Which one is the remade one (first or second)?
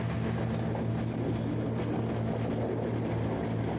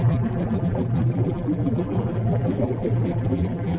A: second